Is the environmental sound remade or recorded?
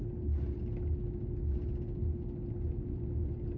recorded